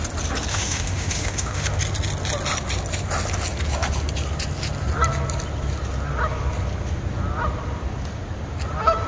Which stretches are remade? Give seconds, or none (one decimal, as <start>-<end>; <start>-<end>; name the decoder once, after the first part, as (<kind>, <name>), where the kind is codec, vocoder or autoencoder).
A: 0.5-1.8 (autoencoder, DAC-VAE)